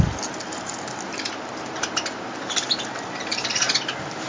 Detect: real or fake real